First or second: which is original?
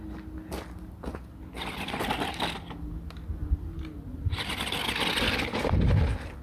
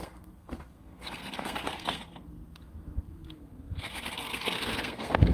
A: first